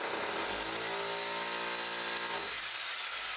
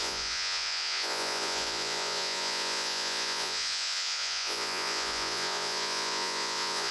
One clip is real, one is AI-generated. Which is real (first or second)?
first